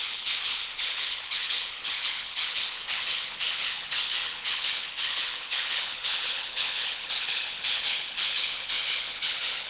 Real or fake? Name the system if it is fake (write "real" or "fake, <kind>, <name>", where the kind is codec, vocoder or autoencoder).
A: fake, codec, HILCodec